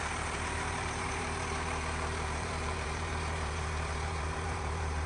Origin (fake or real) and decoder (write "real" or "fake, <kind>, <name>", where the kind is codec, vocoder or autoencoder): fake, vocoder, BigVGAN v2